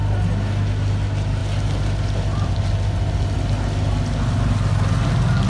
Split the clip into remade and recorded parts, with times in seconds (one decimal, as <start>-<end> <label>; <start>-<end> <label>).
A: 0.0-5.5 recorded